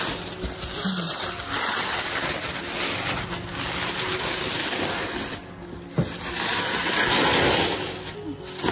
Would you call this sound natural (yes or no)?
yes